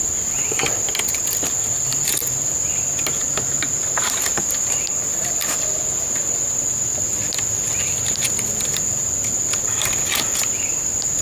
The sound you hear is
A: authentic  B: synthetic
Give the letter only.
A